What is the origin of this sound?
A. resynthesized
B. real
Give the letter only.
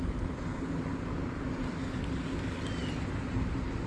B